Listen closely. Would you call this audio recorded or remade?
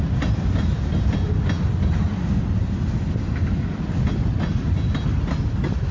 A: recorded